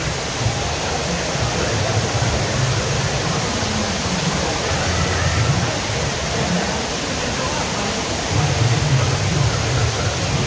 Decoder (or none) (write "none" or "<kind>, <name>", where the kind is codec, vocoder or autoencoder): none